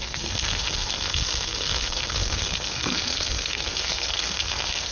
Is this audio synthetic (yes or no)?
yes